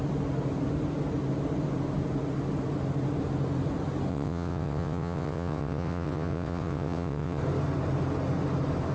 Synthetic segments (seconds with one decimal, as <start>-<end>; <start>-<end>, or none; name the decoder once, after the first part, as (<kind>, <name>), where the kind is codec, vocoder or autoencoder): 4.1-7.4 (vocoder, WaveNeXt)